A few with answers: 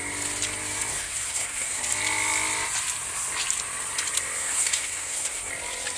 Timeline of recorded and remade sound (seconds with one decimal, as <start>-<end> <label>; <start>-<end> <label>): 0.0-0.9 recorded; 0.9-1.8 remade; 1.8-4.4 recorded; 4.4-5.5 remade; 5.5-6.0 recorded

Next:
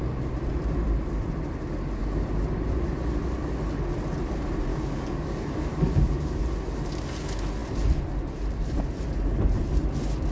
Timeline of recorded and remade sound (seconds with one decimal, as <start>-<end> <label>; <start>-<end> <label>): 0.0-4.7 recorded; 4.7-6.4 remade; 6.4-10.3 recorded

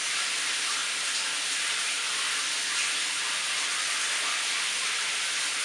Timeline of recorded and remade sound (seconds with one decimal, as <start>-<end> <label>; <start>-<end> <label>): 0.0-5.6 recorded

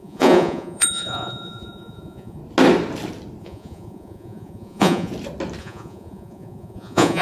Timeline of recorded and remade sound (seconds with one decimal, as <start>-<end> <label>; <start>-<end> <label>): 0.0-2.4 remade; 2.4-3.4 recorded; 3.4-5.1 remade; 5.1-5.6 recorded; 5.6-7.2 remade

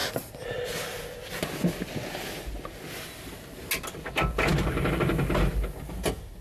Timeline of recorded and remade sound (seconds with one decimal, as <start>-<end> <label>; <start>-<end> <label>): 0.0-6.4 recorded